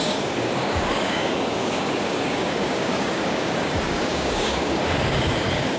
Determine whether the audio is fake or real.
fake